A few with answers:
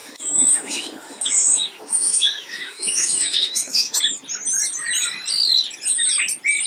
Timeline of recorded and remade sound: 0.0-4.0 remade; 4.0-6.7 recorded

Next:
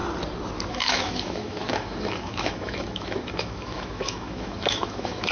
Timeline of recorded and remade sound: 0.0-0.7 recorded; 0.7-5.3 remade